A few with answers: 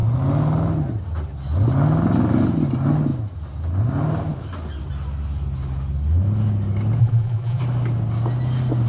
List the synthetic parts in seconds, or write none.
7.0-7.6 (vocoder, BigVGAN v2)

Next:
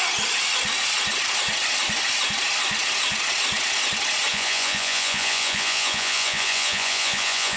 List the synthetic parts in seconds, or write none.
4.3-7.6 (vocoder, Vocos)